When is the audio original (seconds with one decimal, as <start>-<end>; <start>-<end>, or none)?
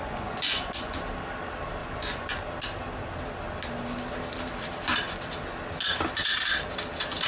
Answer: 1.0-1.8; 2.4-7.3